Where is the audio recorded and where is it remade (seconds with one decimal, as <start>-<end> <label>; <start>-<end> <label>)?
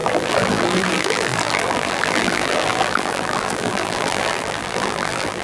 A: 0.0-5.4 remade